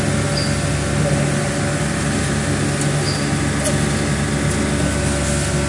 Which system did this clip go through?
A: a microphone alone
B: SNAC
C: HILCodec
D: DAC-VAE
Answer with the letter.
A